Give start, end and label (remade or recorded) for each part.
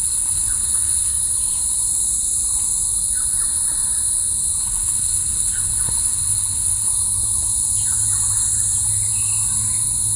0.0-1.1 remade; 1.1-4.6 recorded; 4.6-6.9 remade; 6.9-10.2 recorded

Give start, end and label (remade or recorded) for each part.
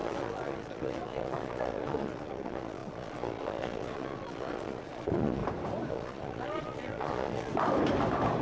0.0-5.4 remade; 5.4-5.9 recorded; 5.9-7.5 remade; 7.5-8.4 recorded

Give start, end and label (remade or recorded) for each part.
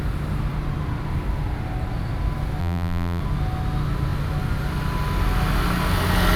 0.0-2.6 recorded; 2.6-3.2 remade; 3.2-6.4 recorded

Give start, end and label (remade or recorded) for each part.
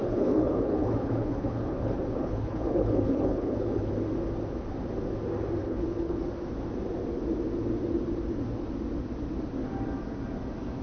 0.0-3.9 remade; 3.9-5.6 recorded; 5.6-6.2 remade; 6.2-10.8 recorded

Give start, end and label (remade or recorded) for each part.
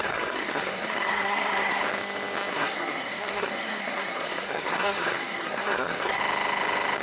0.0-1.8 remade; 1.8-2.5 recorded; 2.5-6.2 remade; 6.2-7.0 recorded